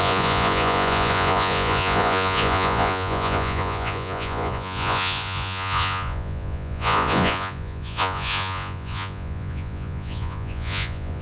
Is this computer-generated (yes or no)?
yes